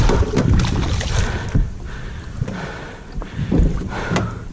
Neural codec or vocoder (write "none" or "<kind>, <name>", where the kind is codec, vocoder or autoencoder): none